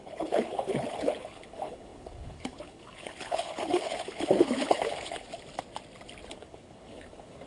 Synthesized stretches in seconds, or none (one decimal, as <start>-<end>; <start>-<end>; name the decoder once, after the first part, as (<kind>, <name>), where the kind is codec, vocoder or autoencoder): 0.0-5.3 (codec, HILCodec); 6.3-7.5